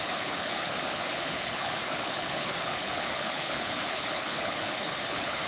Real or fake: fake